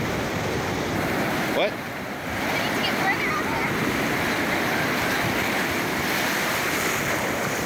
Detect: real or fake real